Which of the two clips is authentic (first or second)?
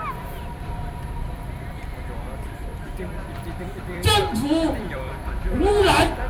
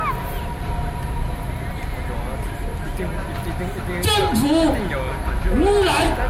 second